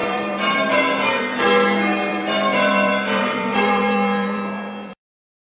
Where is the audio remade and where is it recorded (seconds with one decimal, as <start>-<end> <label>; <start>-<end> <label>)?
0.0-0.8 remade; 0.8-2.1 recorded; 2.1-5.5 remade